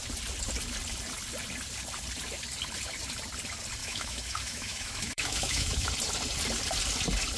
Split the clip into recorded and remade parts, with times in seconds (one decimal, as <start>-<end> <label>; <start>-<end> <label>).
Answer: 0.0-3.8 recorded; 3.8-5.9 remade; 5.9-7.4 recorded